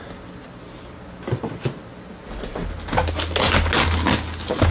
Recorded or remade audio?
recorded